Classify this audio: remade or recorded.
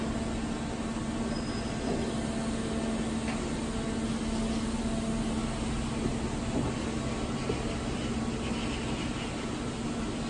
recorded